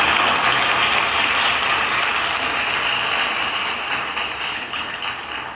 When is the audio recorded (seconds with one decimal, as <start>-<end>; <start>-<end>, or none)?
0.0-4.5; 5.0-5.5